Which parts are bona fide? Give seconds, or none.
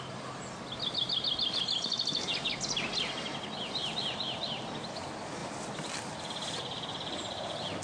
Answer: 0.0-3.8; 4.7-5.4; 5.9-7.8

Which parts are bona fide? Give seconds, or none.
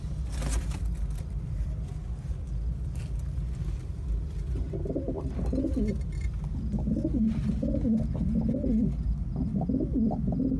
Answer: 0.0-10.6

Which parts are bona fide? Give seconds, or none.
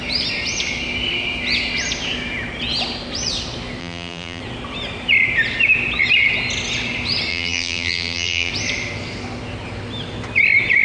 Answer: 0.0-3.8; 4.4-7.3; 8.5-10.8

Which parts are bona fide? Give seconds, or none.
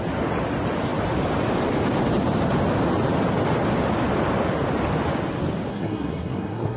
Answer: 0.0-5.7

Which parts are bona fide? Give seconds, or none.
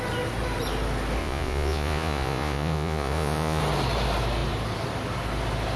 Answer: 0.0-1.2; 3.6-5.8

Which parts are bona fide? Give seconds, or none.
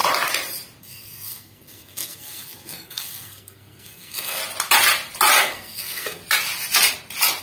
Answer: 0.0-0.8; 4.4-5.4; 6.2-7.4